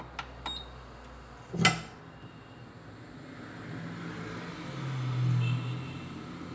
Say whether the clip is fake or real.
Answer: real